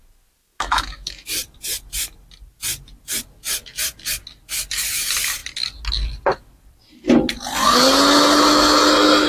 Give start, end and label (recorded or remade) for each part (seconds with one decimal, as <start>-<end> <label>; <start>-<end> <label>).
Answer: 0.0-0.4 recorded; 0.4-1.3 remade; 1.3-9.3 recorded